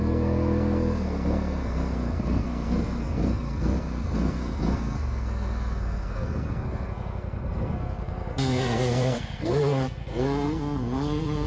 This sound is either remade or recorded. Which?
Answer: remade